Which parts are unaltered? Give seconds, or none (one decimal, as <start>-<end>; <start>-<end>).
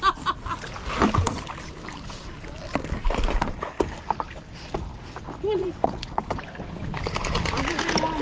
0.0-5.6; 6.2-8.2